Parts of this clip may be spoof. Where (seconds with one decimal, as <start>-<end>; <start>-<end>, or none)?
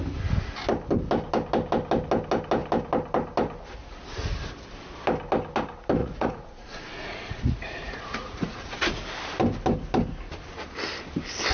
6.0-8.8